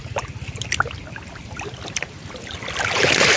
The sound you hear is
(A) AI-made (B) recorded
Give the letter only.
B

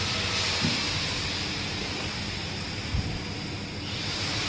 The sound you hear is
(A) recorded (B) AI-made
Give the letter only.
A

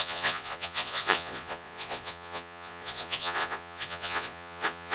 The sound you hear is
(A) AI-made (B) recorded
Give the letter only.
A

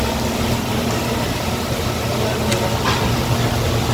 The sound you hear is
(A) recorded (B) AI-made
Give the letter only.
A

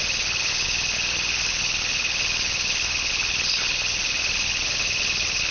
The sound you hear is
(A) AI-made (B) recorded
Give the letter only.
A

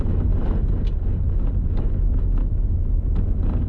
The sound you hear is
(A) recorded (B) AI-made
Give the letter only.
A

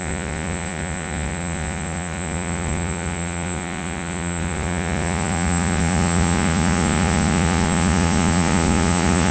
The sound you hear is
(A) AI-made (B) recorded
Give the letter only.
A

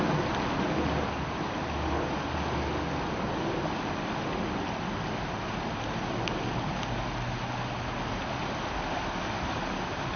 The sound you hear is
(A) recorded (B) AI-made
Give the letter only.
A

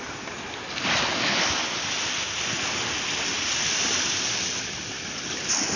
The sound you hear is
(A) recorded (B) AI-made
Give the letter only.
A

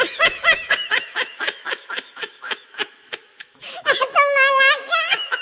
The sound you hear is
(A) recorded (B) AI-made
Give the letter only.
B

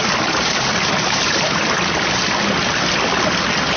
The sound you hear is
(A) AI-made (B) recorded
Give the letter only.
B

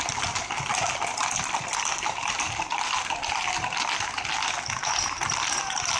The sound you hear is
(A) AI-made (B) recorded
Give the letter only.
A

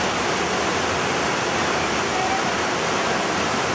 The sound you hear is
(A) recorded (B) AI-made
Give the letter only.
A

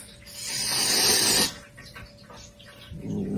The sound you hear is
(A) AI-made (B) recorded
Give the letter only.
B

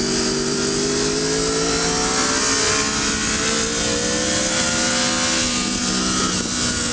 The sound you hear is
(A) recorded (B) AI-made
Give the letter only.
A